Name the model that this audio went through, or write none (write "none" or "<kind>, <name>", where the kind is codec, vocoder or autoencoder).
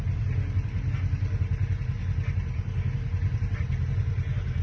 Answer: none